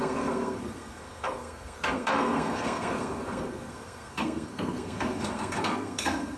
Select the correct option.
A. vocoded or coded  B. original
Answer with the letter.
A